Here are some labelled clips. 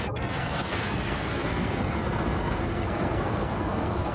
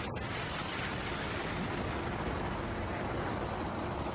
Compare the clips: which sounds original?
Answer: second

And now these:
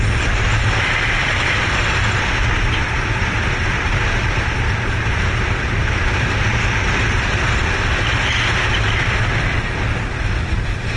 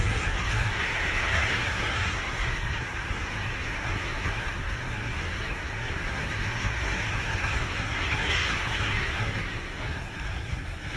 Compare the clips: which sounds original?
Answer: first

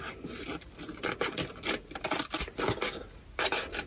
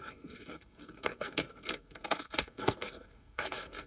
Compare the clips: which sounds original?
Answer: first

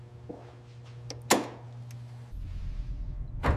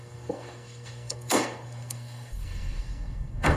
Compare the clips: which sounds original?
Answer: first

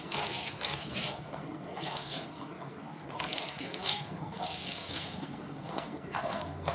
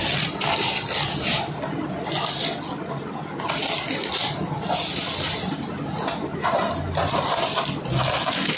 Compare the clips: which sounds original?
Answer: second